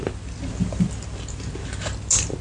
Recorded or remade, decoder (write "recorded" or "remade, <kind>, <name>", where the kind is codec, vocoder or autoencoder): recorded